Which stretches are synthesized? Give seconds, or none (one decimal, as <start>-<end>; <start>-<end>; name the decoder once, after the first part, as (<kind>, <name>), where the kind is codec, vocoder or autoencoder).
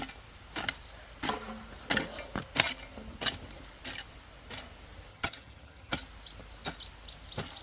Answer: 5.1-5.9 (vocoder, HiFi-GAN)